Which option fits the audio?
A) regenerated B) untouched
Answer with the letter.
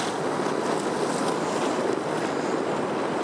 B